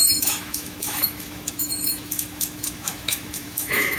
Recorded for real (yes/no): no